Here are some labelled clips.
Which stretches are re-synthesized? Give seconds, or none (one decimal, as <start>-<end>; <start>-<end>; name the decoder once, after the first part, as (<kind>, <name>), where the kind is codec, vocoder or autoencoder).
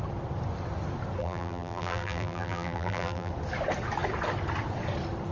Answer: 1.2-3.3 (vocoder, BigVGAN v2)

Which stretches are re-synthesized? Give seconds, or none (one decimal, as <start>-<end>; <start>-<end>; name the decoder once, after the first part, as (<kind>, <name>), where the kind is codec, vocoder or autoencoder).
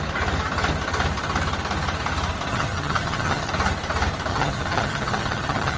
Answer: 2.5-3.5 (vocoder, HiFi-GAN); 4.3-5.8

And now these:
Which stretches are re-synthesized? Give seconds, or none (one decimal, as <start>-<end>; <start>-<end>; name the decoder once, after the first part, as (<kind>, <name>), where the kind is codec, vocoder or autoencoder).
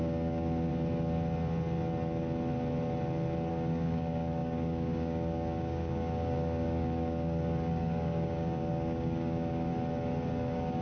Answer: 0.0-0.7 (codec, DAC); 3.5-9.7; 10.3-10.8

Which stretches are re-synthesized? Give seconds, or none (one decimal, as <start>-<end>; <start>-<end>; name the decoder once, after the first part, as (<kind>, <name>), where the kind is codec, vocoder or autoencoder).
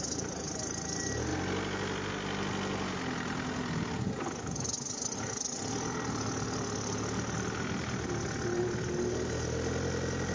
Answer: none